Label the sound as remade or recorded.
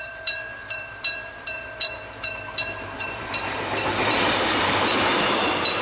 remade